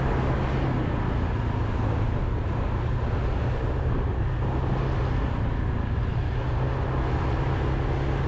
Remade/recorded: recorded